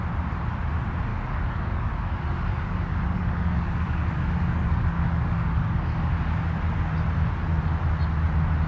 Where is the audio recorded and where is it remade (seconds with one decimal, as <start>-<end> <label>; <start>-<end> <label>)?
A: 0.0-1.1 recorded; 1.1-6.1 remade; 6.1-8.7 recorded